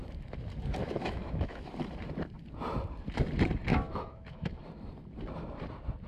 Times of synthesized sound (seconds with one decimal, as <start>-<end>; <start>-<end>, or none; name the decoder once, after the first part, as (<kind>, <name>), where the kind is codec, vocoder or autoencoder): 0.8-1.7 (autoencoder, DAC-VAE); 3.7-4.7